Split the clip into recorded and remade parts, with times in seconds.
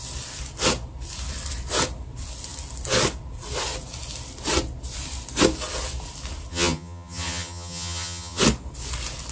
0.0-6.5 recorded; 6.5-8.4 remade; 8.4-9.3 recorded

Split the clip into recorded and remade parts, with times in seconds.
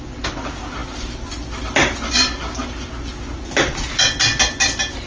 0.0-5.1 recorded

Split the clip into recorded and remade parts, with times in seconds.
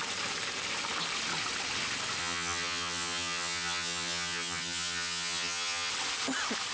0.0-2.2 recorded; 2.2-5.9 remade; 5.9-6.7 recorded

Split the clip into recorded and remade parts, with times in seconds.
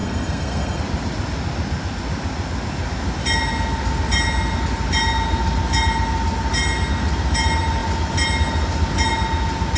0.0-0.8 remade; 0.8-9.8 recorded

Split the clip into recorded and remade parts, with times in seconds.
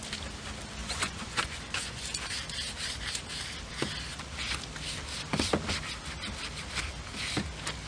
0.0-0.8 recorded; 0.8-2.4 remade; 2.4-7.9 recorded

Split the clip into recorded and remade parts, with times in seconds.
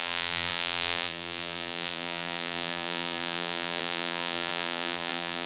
0.0-5.5 remade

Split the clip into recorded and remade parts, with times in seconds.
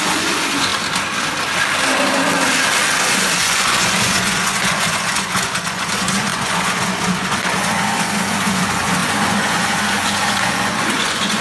0.0-0.7 remade; 0.7-3.0 recorded; 3.0-11.4 remade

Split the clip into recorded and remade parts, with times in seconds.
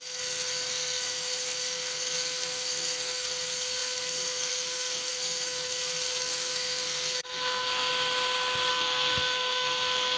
0.0-7.9 remade; 7.9-8.7 recorded; 8.7-10.2 remade